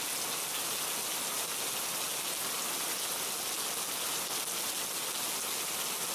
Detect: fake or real real